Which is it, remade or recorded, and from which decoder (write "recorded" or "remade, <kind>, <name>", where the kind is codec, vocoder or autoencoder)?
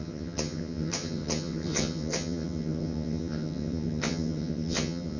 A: remade, vocoder, HiFi-GAN